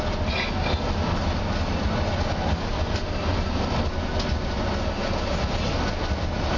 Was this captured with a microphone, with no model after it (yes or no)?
yes